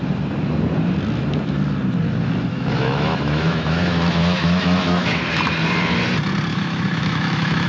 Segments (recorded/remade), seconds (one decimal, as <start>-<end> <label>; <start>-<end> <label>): 0.0-2.5 recorded; 2.5-5.2 remade; 5.2-6.5 recorded; 6.5-7.7 remade